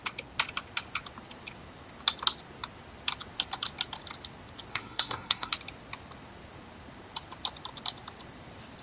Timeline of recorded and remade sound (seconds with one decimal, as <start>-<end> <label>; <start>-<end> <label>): 0.0-4.7 recorded; 4.7-5.5 remade; 5.5-8.8 recorded